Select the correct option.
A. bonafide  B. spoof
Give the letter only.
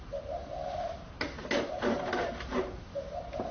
A